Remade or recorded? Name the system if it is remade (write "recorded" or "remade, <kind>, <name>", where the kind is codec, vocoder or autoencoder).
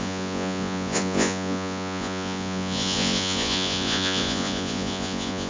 remade, vocoder, Vocos